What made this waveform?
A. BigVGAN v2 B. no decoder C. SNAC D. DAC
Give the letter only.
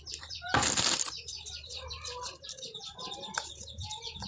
A